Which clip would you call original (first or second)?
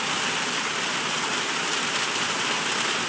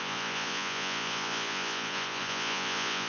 first